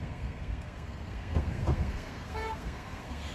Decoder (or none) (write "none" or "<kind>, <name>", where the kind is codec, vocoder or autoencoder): codec, SNAC